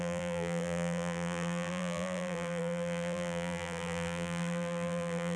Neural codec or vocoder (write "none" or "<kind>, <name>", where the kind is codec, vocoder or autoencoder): vocoder, BigVGAN v2